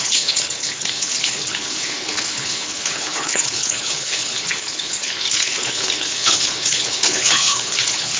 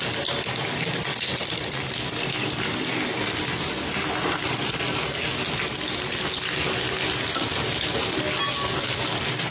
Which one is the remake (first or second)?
first